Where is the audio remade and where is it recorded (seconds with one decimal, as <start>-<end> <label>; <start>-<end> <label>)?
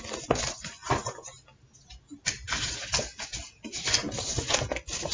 0.0-5.1 recorded